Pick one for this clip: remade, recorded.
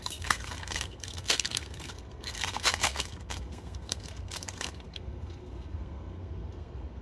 remade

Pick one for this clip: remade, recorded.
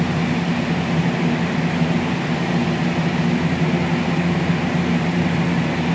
recorded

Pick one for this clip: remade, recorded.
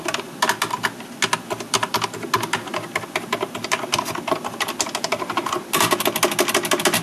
recorded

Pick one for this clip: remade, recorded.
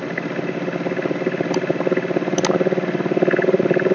recorded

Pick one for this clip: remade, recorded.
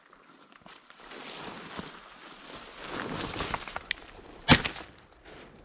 recorded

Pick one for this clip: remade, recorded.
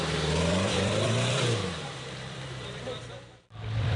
remade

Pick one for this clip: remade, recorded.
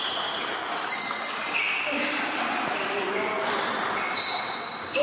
recorded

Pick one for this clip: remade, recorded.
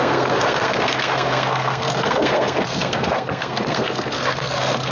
remade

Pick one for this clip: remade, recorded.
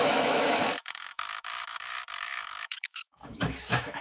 remade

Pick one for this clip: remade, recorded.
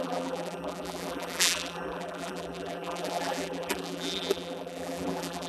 remade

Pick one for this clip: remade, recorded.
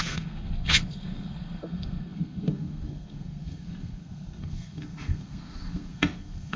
remade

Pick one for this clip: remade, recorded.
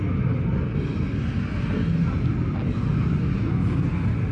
recorded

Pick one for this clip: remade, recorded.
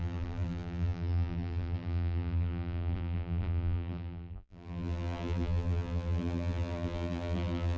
remade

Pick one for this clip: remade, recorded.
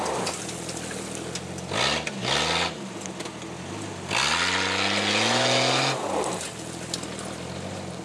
recorded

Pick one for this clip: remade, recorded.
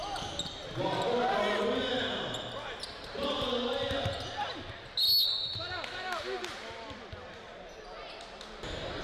recorded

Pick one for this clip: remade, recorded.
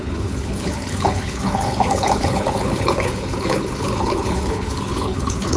remade